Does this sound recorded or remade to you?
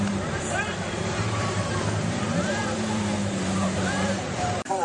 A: remade